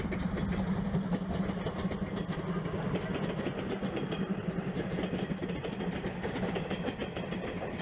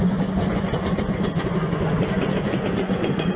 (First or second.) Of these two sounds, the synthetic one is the second